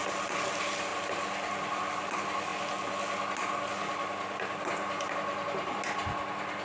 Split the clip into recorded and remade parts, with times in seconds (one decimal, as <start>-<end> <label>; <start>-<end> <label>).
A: 0.0-6.6 recorded